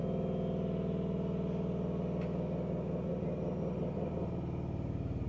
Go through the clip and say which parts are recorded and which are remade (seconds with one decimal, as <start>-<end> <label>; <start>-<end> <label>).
0.0-5.3 recorded